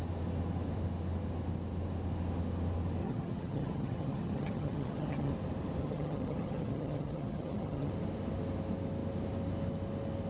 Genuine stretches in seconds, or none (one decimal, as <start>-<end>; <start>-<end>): 0.0-3.0; 5.3-5.8; 7.9-10.3